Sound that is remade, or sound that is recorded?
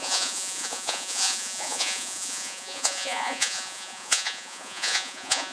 remade